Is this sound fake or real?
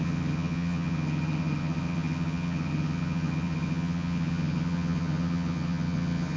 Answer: fake